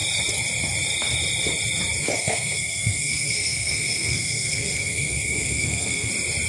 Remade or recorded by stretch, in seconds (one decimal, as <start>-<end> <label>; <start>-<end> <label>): 0.0-2.2 recorded; 2.2-6.1 remade; 6.1-6.5 recorded